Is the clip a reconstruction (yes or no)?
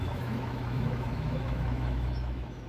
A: yes